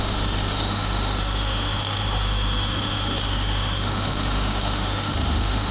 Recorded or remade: remade